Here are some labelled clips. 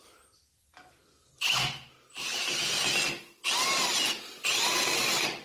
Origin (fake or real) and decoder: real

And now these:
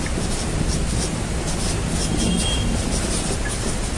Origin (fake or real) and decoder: real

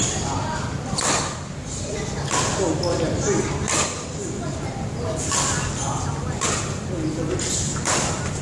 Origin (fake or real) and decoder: real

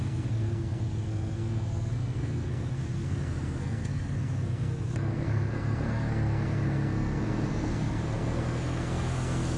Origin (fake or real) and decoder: fake, codec, SNAC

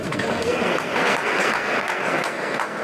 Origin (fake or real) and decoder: fake, codec, SNAC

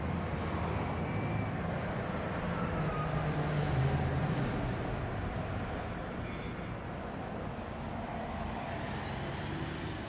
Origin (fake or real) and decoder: real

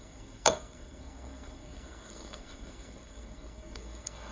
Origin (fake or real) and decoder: fake, codec, SNAC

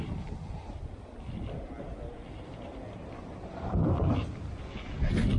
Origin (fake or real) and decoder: real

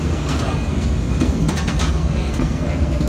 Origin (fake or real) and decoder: fake, codec, SNAC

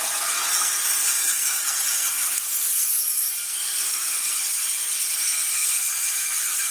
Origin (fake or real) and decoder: fake, codec, SNAC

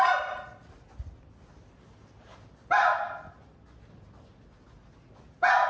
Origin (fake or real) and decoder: real